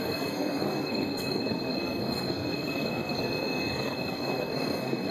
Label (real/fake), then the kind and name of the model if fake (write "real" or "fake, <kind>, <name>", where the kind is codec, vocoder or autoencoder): fake, codec, SNAC